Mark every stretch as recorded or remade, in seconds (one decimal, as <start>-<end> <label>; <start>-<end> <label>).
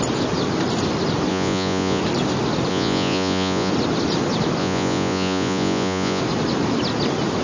0.0-1.3 recorded; 1.3-2.0 remade; 2.0-2.7 recorded; 2.7-3.7 remade; 3.7-4.6 recorded; 4.6-6.2 remade; 6.2-7.4 recorded